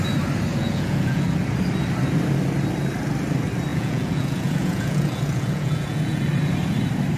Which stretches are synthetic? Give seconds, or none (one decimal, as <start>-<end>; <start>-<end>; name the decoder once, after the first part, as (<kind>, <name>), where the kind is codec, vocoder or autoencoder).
0.5-1.2 (vocoder, Vocos); 3.7-6.2